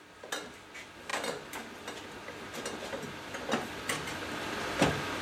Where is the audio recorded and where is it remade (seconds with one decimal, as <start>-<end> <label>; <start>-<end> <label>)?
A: 0.0-5.2 recorded